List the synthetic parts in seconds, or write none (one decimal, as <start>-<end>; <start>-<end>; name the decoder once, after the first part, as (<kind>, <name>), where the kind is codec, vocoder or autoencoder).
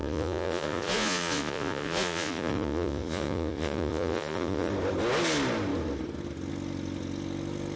0.0-4.7 (vocoder, Vocos)